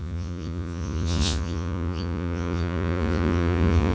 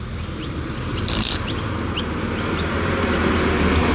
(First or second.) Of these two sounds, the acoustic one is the second